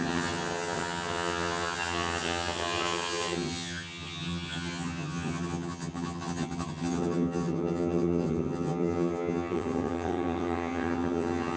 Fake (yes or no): yes